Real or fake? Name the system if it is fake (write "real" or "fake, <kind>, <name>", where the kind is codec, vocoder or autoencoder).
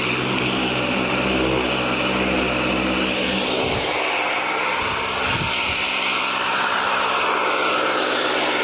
real